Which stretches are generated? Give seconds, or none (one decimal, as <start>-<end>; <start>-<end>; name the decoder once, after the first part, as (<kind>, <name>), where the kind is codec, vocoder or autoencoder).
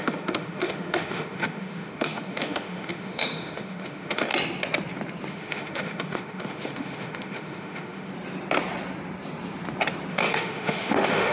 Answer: 0.0-4.3 (autoencoder, DAC-VAE); 5.3-8.1; 10.1-11.3